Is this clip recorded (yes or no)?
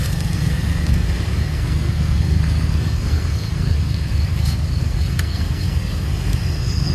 no